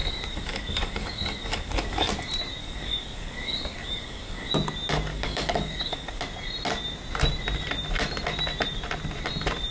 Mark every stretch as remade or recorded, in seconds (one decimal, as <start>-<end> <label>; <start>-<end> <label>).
0.0-2.1 remade; 2.1-2.6 recorded; 2.6-4.5 remade; 4.5-5.1 recorded; 5.1-6.2 remade; 6.2-9.7 recorded

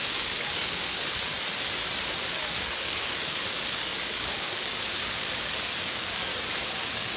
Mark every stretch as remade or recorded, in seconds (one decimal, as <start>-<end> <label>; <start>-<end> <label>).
0.0-1.3 remade; 1.3-2.3 recorded; 2.3-6.3 remade; 6.3-6.8 recorded; 6.8-7.2 remade